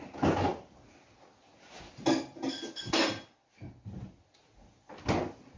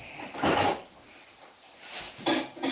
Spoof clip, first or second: second